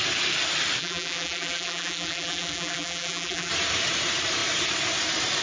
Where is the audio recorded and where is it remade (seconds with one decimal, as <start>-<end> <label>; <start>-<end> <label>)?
0.0-0.8 recorded; 0.8-3.5 remade; 3.5-5.4 recorded